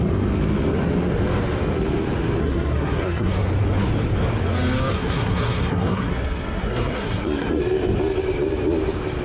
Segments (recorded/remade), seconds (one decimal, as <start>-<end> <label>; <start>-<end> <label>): 0.0-2.4 recorded; 2.4-3.5 remade; 3.5-4.9 recorded; 4.9-7.6 remade; 7.6-9.2 recorded